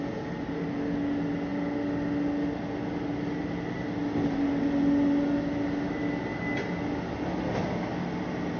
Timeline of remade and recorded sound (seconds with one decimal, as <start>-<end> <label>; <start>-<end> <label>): 0.0-8.6 recorded